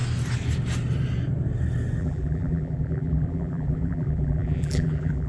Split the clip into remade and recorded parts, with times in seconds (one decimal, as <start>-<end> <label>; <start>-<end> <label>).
0.0-2.0 recorded; 2.0-5.3 remade